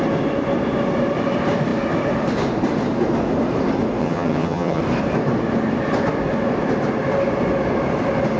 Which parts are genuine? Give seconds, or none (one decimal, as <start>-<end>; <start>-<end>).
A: 0.0-4.0; 4.8-8.4